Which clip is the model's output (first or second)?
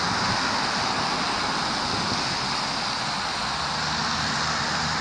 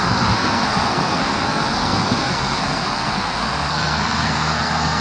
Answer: second